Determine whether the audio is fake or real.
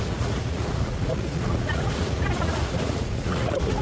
fake